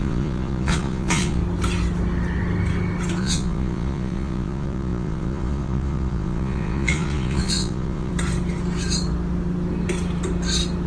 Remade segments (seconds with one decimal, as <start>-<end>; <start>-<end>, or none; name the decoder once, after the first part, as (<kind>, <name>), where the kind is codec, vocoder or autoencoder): 0.0-1.4 (vocoder, Vocos); 3.2-8.1